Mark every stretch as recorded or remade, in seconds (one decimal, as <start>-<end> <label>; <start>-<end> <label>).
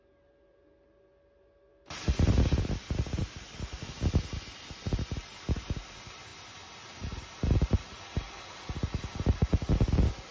0.0-10.3 recorded